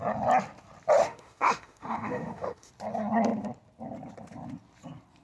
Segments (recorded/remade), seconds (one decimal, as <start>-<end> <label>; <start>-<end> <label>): 0.0-1.0 recorded; 1.0-2.7 remade; 2.7-5.2 recorded